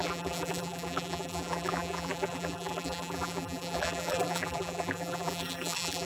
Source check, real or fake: fake